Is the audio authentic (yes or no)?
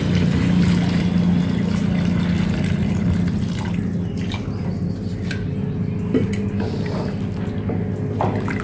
yes